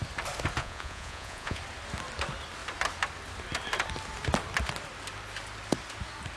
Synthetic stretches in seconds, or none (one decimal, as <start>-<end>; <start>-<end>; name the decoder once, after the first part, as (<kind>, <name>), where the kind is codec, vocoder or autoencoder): 0.6-1.6 (vocoder, Vocos)